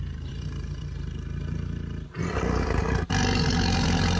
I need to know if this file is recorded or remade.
recorded